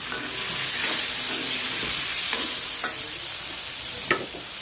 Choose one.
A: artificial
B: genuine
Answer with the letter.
B